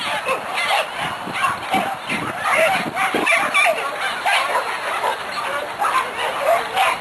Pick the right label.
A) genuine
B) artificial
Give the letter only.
A